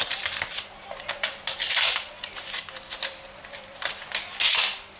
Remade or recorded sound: recorded